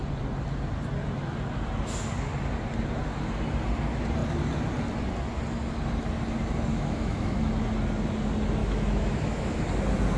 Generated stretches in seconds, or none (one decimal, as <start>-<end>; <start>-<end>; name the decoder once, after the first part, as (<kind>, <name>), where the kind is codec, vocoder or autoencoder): 6.7-7.4 (autoencoder, DAC-VAE); 8.6-9.6